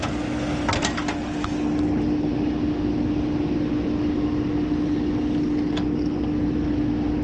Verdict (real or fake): real